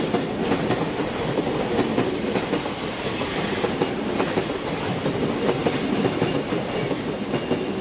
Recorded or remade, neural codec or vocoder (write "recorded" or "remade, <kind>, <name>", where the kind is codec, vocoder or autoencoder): recorded